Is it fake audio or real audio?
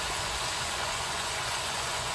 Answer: fake